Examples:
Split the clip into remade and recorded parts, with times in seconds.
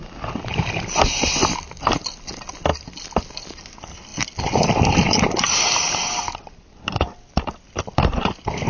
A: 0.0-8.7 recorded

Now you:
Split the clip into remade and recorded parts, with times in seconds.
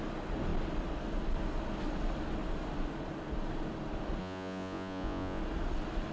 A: 0.0-4.2 recorded; 4.2-5.4 remade; 5.4-6.1 recorded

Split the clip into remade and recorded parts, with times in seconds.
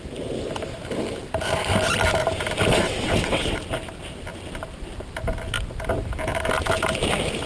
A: 0.0-2.7 recorded; 2.7-3.6 remade; 3.6-7.5 recorded